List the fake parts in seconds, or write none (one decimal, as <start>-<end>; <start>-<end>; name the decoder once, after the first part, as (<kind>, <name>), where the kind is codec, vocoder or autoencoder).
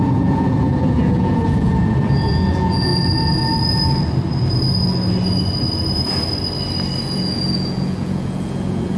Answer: 0.0-2.9 (vocoder, Vocos); 7.0-9.0